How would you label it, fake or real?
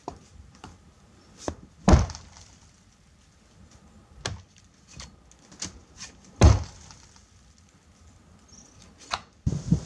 real